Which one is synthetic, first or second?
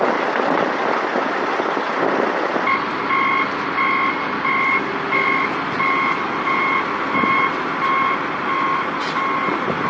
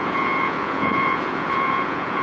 second